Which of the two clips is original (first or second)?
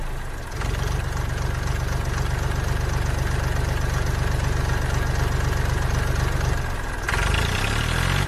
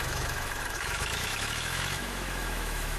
first